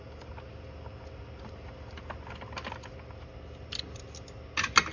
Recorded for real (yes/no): yes